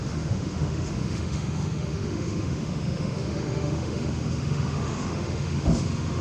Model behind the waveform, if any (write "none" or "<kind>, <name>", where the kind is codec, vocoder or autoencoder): autoencoder, DAC-VAE